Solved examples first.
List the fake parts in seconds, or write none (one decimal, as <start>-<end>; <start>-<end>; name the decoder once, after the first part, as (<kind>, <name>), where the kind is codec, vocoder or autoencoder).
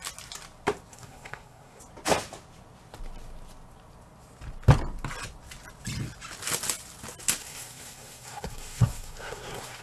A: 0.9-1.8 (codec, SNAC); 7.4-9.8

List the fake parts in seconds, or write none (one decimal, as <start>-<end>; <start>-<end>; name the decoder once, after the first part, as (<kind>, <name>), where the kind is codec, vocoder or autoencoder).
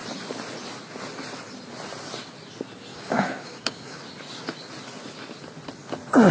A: 2.9-4.0 (codec, DAC)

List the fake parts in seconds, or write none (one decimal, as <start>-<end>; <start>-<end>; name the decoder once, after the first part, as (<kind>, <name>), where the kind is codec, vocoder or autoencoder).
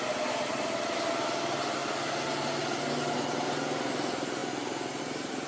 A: none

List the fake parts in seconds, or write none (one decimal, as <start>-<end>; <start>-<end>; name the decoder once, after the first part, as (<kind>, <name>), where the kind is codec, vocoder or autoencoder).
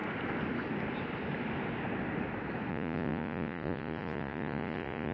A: 2.7-5.1 (vocoder, Vocos)